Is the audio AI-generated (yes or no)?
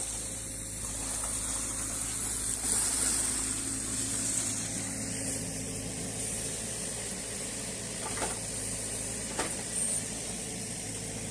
no